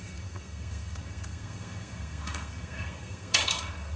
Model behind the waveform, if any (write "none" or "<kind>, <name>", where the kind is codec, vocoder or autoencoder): codec, SNAC